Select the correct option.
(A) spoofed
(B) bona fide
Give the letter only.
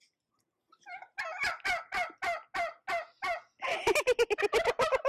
B